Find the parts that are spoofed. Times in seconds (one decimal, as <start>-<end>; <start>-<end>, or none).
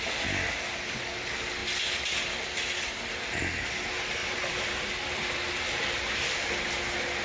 1.6-3.0; 4.2-5.8